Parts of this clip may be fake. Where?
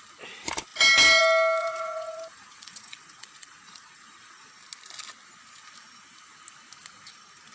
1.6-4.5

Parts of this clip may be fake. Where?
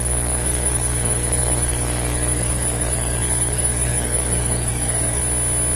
0.0-5.2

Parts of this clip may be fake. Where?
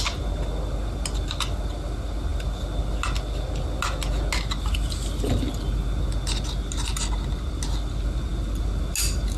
none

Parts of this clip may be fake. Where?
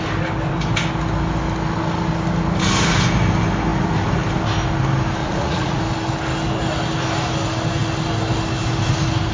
5.2-5.8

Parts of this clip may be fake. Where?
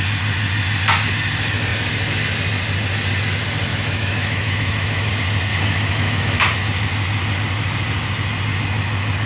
3.7-5.1; 5.5-6.4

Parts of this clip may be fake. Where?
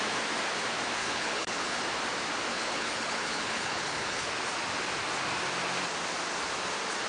1.0-1.8; 2.5-4.3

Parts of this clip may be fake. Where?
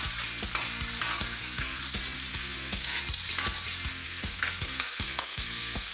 1.1-1.8; 2.3-3.0; 3.9-5.9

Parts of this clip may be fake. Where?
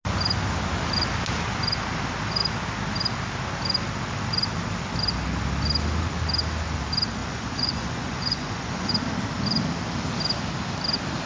7.2-8.9